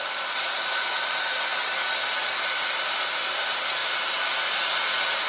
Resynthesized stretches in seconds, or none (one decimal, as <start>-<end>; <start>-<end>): none